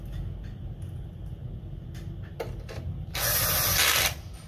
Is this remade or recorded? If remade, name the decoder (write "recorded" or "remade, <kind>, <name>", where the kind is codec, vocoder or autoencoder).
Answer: recorded